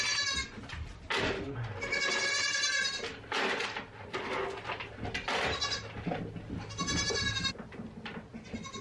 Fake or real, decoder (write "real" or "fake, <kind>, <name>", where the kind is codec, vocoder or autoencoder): real